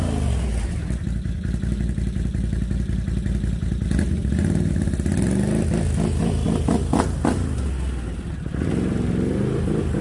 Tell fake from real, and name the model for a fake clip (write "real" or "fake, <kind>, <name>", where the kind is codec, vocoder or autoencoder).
real